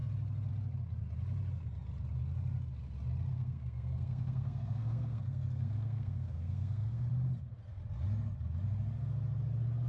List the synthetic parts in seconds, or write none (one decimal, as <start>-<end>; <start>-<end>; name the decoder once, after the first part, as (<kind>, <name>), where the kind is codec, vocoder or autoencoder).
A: 3.3-7.1 (codec, SNAC)